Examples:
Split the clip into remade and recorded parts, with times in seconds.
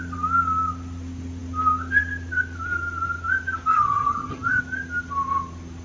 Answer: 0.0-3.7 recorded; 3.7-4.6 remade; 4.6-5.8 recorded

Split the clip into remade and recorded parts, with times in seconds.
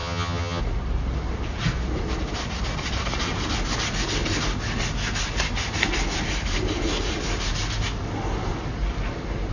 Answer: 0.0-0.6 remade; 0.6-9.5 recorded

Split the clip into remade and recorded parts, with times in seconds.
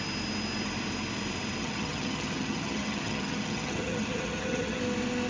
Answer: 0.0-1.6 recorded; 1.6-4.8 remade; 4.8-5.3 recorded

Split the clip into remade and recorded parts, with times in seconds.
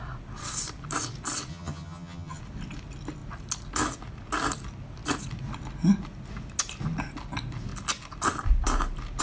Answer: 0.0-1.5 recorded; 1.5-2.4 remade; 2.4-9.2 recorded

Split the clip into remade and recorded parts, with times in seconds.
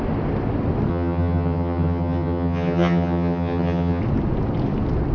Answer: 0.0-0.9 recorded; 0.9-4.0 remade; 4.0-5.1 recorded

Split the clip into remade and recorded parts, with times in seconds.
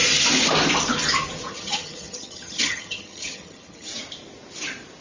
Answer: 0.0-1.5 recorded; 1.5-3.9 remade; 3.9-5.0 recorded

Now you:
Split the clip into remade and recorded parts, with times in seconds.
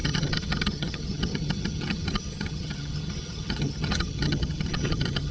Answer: 0.0-5.3 remade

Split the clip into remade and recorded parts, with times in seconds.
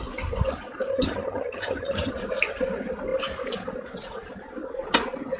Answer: 0.0-0.9 recorded; 0.9-2.1 remade; 2.1-5.4 recorded